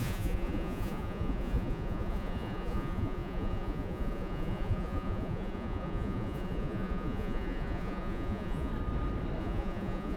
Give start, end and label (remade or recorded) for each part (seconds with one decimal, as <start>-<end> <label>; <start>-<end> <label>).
0.0-8.7 remade; 8.7-9.4 recorded; 9.4-10.2 remade